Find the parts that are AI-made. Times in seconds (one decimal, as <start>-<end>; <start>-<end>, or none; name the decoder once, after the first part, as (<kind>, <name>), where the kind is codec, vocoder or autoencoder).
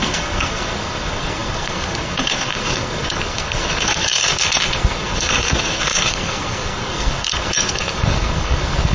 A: 0.0-8.9 (codec, SNAC)